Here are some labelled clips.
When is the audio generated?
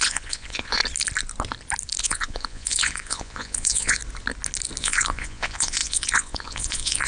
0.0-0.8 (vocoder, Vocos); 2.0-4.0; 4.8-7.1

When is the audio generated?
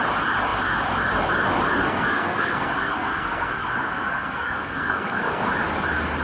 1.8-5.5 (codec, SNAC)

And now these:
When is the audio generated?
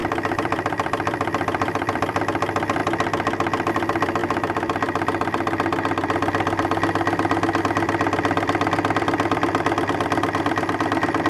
0.0-2.2 (vocoder, BigVGAN v2)